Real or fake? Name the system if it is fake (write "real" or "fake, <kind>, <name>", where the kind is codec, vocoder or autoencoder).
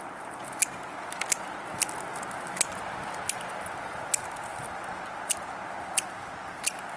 real